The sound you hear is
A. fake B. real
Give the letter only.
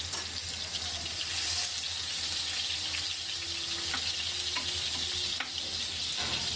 B